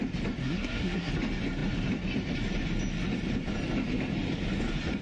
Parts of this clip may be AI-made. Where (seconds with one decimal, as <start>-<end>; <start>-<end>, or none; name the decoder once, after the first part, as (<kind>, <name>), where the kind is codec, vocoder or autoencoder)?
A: 0.4-1.1 (codec, SNAC)